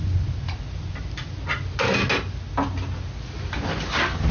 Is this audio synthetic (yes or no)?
no